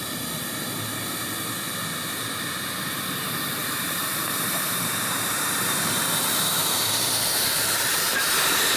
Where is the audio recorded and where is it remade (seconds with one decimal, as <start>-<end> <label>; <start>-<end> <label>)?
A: 0.0-3.6 recorded; 3.6-8.3 remade; 8.3-8.8 recorded